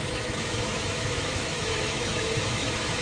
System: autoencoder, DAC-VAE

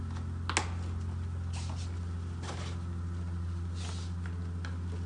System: none